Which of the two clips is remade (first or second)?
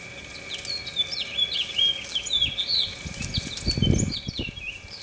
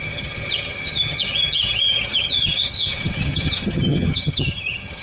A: second